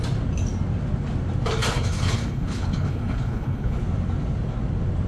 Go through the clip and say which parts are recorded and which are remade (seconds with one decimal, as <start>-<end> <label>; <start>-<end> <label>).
0.0-1.7 recorded; 1.7-3.8 remade; 3.8-5.1 recorded